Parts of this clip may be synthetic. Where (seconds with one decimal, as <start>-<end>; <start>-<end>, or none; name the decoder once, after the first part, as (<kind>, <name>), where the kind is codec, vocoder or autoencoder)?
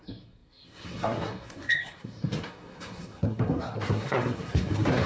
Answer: 0.0-5.1 (codec, SNAC)